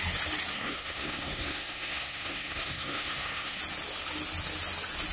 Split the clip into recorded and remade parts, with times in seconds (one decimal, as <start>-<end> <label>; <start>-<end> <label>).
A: 0.0-0.5 recorded; 0.5-3.6 remade; 3.6-5.1 recorded